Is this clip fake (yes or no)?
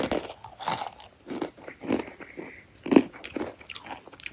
no